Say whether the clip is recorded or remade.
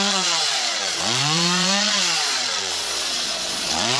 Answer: remade